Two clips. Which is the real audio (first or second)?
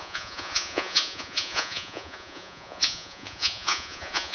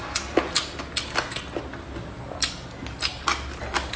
second